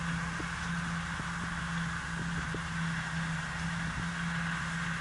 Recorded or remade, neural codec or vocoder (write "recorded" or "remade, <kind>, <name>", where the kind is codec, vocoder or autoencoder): recorded